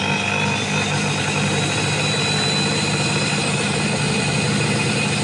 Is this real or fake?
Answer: real